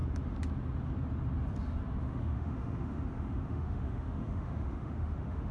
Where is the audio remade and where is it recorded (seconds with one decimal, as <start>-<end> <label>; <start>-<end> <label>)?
0.0-2.0 recorded; 2.0-5.5 remade